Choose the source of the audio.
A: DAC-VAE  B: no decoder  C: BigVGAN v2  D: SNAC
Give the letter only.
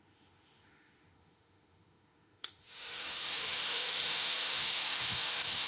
A